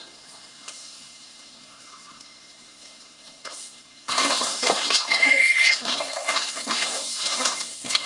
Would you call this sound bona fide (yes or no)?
no